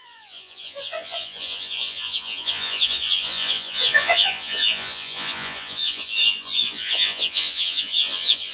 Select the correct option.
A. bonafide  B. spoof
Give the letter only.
B